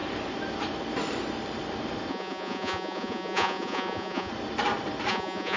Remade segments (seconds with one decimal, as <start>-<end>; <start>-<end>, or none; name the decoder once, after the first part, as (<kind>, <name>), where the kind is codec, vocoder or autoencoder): 2.1-4.3 (vocoder, Vocos); 5.1-5.6